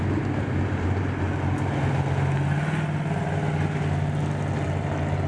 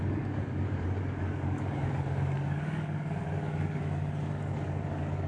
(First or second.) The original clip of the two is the first